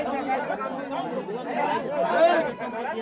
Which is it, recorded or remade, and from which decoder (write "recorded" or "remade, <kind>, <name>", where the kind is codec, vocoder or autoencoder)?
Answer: recorded